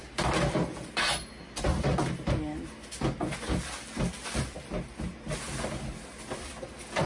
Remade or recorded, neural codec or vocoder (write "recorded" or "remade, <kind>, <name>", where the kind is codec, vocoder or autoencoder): recorded